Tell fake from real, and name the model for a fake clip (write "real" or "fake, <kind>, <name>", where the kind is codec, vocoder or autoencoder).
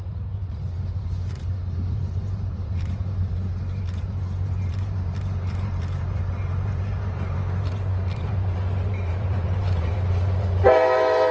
fake, vocoder, BigVGAN v2